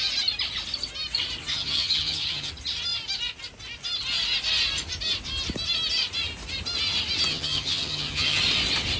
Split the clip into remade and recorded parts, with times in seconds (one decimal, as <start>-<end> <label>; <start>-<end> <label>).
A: 0.0-1.5 recorded; 1.5-2.5 remade; 2.5-7.3 recorded; 7.3-8.4 remade; 8.4-9.0 recorded